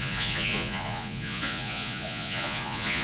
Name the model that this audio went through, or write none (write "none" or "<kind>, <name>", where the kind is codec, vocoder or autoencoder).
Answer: vocoder, Vocos